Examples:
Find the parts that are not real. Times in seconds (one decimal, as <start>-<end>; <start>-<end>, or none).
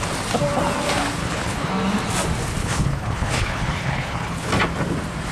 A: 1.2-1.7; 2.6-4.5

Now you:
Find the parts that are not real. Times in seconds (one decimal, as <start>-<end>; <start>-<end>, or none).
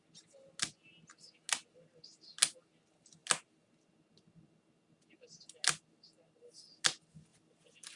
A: none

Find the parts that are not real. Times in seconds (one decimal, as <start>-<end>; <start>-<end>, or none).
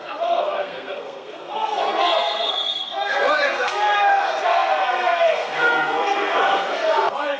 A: 0.0-7.4